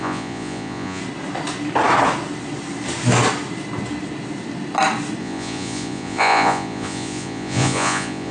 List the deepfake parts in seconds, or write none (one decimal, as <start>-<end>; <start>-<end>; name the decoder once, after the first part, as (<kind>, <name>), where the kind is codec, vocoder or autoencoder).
0.0-1.0 (vocoder, Vocos); 5.2-8.3